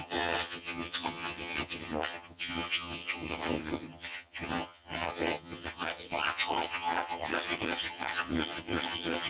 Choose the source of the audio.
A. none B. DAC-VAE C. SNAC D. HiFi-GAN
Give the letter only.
D